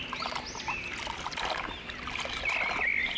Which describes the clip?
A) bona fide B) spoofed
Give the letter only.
A